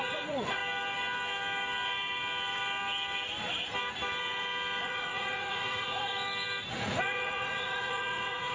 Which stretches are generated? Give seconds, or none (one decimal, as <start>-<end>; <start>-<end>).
0.0-0.6; 4.8-6.1; 6.7-8.5